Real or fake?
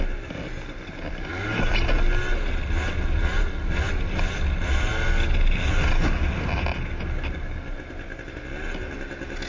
real